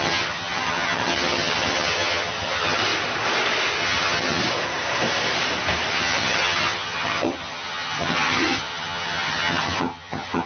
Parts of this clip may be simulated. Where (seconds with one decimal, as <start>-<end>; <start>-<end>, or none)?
0.0-2.8; 3.7-4.4; 5.9-10.5